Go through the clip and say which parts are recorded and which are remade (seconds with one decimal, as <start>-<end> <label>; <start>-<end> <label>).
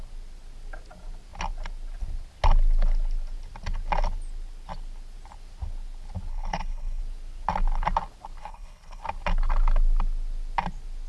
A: 0.0-6.3 recorded; 6.3-7.0 remade; 7.0-8.4 recorded; 8.4-9.0 remade; 9.0-11.1 recorded